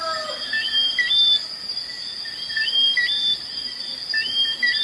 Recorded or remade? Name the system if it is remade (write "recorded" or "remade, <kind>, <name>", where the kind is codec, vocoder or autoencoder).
recorded